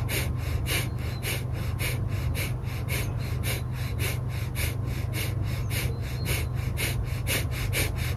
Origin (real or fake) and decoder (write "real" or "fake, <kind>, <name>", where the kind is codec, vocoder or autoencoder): real